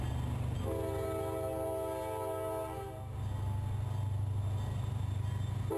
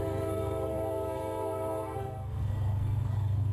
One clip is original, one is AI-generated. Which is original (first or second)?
first